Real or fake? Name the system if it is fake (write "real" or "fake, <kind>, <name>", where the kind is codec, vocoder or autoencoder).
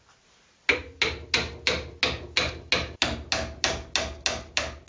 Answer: real